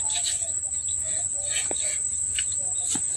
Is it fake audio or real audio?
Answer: real